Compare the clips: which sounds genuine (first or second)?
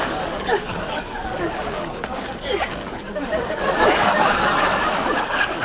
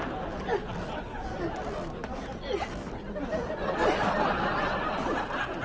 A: second